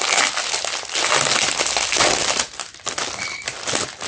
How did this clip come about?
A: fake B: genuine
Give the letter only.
B